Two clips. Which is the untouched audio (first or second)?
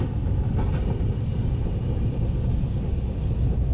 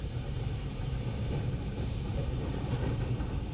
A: first